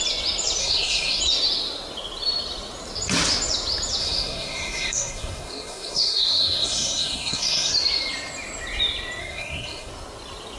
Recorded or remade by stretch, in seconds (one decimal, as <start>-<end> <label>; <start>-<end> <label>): 0.0-0.6 recorded; 0.6-1.2 remade; 1.2-4.0 recorded; 4.0-7.7 remade; 7.7-9.2 recorded; 9.2-9.9 remade; 9.9-10.6 recorded